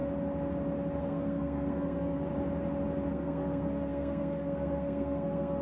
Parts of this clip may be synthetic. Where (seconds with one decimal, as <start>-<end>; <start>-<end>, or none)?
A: 1.0-2.3; 3.1-5.6

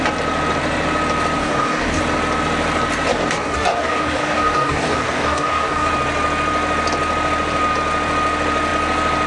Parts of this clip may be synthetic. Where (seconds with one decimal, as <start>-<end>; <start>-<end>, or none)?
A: 1.4-2.0; 3.1-5.9

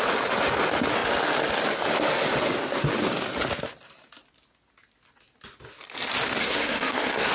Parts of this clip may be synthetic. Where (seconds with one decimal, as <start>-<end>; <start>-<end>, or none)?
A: 6.4-7.3

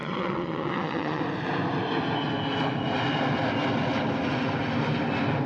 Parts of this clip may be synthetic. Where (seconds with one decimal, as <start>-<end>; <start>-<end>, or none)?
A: 0.0-1.2

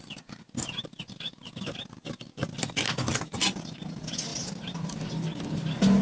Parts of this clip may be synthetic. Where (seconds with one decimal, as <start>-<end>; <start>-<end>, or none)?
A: none

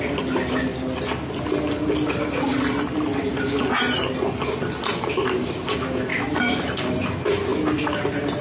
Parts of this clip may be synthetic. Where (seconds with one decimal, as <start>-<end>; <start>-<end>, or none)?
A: 6.1-6.7

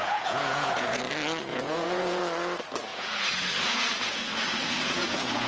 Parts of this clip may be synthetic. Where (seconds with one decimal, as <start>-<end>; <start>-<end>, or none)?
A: 0.0-1.0; 1.5-2.2; 2.9-5.5

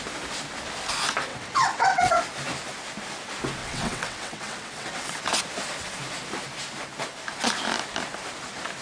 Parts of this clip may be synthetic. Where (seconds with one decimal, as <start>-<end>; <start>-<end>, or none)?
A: 1.3-2.2; 3.6-5.2